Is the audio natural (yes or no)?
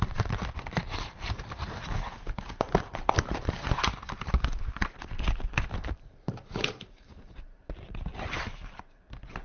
no